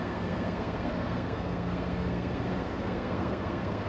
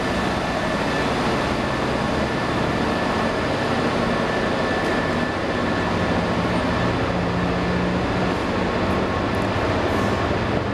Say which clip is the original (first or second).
second